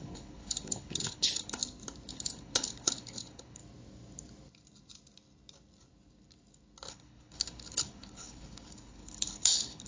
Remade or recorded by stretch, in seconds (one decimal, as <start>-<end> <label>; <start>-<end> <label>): 0.0-1.6 remade; 1.6-2.1 recorded; 2.1-3.6 remade; 3.6-6.9 recorded; 6.9-9.9 remade